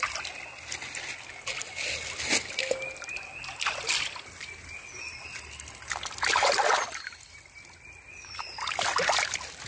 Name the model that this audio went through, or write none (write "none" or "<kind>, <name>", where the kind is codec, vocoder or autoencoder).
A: none